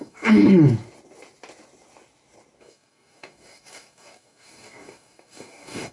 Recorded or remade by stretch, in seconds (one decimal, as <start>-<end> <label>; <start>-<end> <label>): 0.0-0.4 remade; 0.4-2.6 recorded; 2.6-5.9 remade